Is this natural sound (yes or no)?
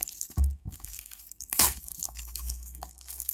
no